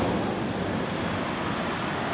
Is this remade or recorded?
recorded